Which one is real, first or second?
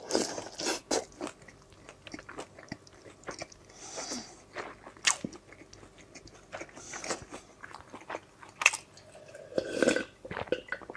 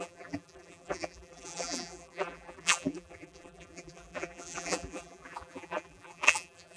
first